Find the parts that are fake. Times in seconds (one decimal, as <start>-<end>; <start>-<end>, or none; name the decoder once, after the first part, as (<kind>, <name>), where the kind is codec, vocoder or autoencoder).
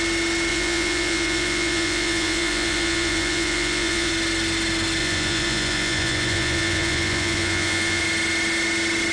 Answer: 0.5-4.1 (vocoder, Vocos); 5.0-8.0